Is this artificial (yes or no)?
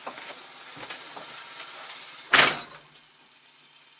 no